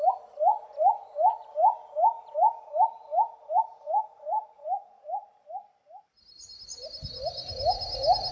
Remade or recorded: recorded